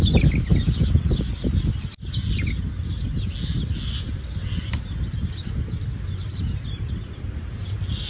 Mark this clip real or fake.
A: real